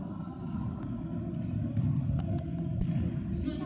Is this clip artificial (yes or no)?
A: no